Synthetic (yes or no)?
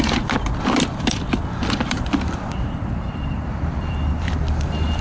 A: yes